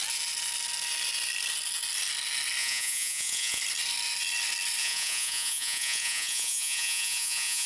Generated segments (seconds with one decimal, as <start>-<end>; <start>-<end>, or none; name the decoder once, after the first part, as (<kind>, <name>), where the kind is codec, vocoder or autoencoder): 2.6-3.6 (vocoder, Vocos); 4.8-7.7